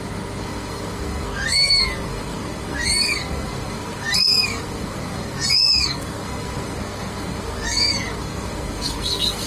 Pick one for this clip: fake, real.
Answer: fake